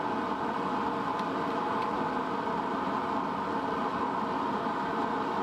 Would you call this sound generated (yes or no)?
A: no